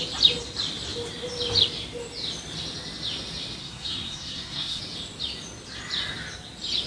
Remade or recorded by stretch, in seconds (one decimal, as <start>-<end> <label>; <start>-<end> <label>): 0.0-3.6 recorded; 3.6-4.8 remade; 4.8-6.9 recorded